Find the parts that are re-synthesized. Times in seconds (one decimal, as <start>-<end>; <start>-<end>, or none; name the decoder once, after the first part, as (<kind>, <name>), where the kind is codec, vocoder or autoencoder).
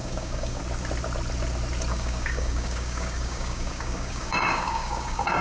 0.0-0.6 (codec, DAC); 1.9-5.4